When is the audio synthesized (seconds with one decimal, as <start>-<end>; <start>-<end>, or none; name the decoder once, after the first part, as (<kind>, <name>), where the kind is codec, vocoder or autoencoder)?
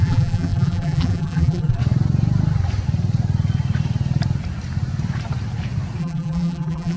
0.0-1.8 (vocoder, BigVGAN v2); 6.0-7.0